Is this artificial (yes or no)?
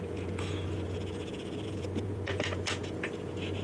yes